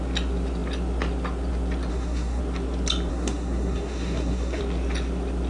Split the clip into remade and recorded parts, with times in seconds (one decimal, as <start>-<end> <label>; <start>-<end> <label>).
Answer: 0.0-1.9 recorded; 1.9-2.4 remade; 2.4-3.1 recorded; 3.1-4.6 remade; 4.6-5.5 recorded